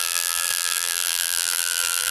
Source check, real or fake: fake